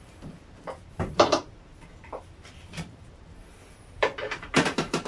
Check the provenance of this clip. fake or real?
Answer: fake